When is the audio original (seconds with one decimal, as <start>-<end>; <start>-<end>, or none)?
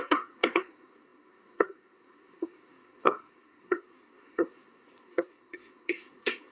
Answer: none